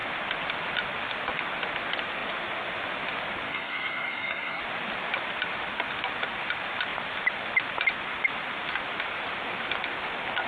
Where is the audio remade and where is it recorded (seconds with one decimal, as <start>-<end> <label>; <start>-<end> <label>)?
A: 0.0-3.5 recorded; 3.5-4.6 remade; 4.6-10.5 recorded